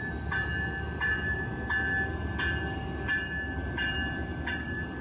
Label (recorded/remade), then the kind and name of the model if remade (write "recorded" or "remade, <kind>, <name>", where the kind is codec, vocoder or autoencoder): recorded